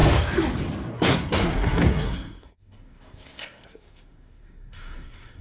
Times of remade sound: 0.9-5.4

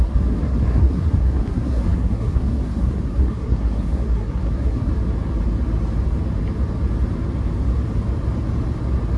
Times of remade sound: 0.0-4.9

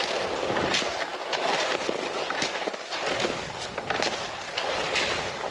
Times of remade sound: none